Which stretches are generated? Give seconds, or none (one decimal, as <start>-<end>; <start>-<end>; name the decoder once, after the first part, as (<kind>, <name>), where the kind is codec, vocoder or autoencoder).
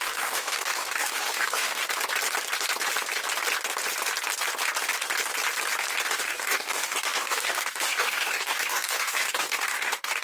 0.0-1.8 (codec, DAC); 6.1-10.2